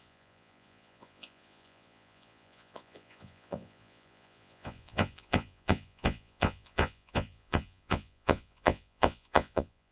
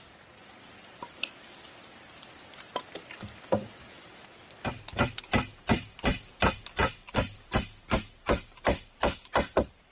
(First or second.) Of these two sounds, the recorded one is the second